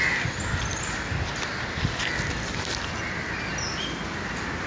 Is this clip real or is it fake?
real